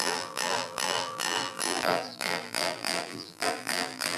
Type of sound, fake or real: fake